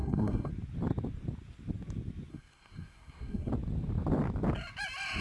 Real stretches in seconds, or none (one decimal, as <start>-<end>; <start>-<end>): 0.5-2.3; 3.5-5.2